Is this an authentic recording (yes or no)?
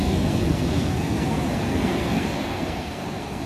no